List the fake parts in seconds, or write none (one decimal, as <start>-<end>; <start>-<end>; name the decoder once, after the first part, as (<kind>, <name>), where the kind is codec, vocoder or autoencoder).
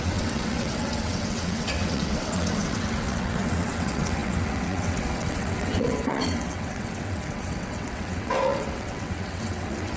0.0-10.0 (vocoder, WaveNeXt)